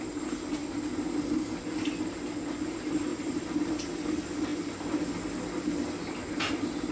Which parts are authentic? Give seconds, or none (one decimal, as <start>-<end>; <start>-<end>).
0.0-3.1; 3.7-6.9